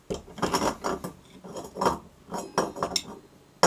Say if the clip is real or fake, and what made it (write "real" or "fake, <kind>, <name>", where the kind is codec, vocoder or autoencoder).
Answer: real